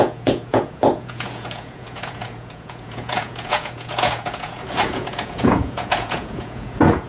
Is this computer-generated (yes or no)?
yes